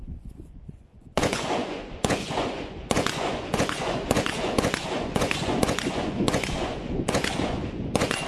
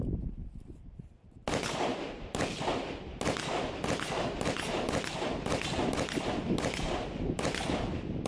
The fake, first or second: first